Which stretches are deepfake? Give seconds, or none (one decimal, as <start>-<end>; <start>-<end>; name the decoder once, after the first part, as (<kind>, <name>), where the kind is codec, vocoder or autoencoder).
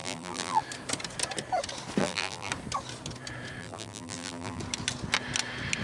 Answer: 0.0-0.6 (vocoder, BigVGAN v2); 2.0-2.5; 3.6-4.6